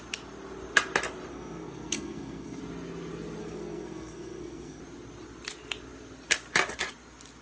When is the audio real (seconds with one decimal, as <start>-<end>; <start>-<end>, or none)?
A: 0.0-1.3; 2.6-3.4; 4.8-7.4